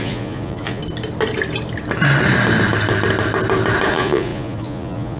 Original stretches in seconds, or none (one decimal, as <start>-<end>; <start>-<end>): 0.8-3.9